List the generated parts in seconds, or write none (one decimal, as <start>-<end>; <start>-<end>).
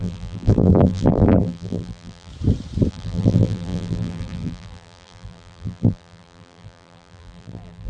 0.0-2.3; 2.9-7.9